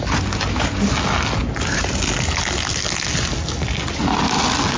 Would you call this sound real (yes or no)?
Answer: yes